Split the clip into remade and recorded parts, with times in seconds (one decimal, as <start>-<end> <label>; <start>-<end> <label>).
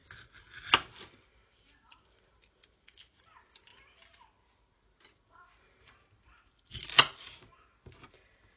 0.0-1.5 recorded; 1.5-3.7 remade; 3.7-7.9 recorded; 7.9-8.6 remade